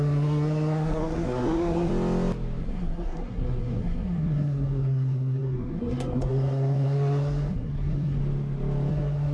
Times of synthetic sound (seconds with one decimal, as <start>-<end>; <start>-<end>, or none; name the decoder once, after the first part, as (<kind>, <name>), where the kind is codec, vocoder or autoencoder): 0.0-1.9 (codec, SNAC); 2.6-8.2; 8.9-9.3